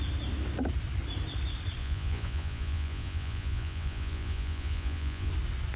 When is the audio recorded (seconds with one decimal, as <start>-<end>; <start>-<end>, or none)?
0.0-1.8; 5.3-5.8